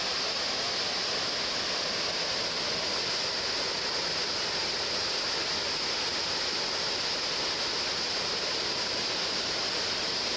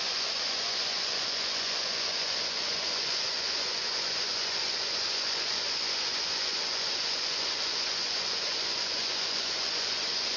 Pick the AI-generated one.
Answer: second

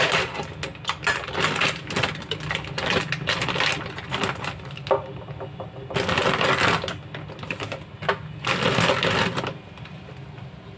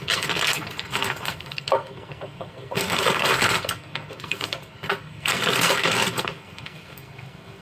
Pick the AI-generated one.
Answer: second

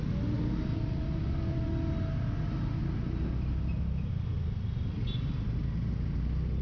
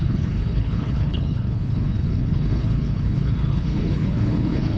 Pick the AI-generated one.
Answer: second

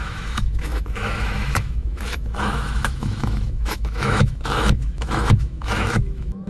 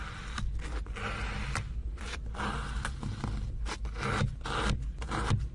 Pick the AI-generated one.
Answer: first